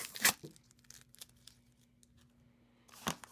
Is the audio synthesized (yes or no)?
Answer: no